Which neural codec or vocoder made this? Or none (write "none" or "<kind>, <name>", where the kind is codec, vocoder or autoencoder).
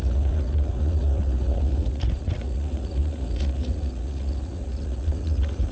vocoder, Vocos